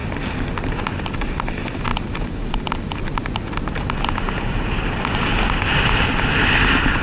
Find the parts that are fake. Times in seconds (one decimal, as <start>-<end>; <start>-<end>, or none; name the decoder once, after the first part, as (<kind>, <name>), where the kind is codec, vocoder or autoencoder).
none